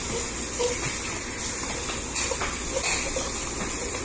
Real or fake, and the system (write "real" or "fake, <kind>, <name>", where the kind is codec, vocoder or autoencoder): real